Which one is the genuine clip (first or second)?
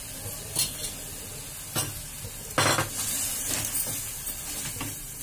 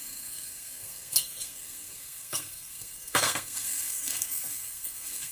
first